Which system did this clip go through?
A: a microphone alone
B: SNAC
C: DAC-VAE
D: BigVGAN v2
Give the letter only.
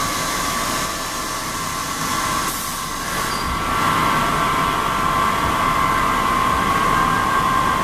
D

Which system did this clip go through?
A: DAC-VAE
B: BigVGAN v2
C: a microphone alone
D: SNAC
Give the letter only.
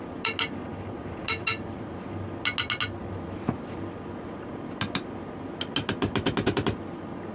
C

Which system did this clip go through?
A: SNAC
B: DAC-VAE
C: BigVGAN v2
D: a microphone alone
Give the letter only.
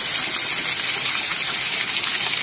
D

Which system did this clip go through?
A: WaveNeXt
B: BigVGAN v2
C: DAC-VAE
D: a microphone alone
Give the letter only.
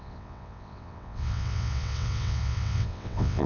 A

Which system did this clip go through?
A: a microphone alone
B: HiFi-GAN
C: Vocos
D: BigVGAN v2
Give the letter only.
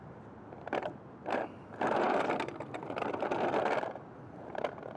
A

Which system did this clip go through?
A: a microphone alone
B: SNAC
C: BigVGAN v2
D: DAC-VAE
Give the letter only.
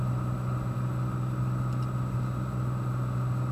A